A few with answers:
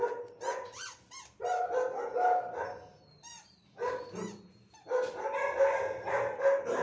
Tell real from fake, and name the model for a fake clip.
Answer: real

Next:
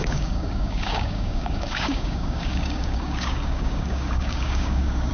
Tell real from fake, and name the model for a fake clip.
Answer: fake, codec, DAC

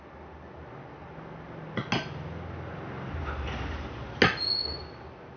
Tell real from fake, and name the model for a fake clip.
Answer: real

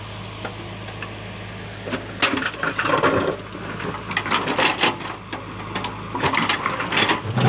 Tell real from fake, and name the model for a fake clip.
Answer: real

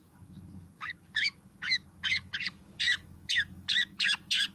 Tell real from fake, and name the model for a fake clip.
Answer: fake, codec, DAC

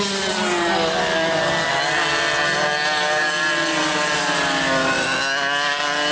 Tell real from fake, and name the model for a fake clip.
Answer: real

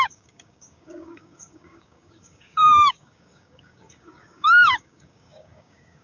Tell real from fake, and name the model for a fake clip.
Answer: fake, codec, DAC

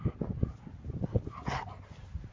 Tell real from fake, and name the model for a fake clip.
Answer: real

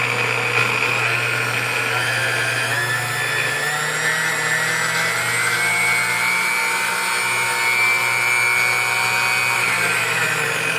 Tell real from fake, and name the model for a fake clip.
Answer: real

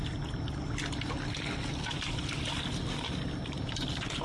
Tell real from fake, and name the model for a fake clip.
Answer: real